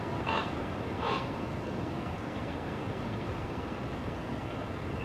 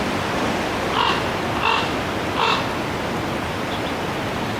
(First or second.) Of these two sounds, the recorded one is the second